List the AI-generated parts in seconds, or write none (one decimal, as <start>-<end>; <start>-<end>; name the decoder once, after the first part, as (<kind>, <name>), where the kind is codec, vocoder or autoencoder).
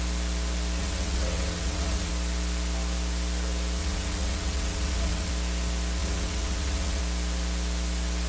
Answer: 0.8-2.1 (vocoder, WaveNeXt); 3.8-5.3; 6.0-7.0